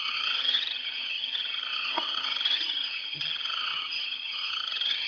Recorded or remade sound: remade